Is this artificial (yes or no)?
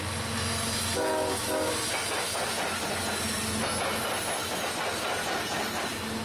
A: no